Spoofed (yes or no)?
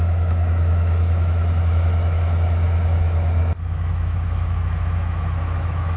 yes